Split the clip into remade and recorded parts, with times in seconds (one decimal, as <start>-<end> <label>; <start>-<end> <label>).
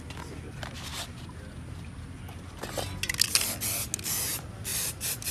0.0-4.7 recorded; 4.7-5.3 remade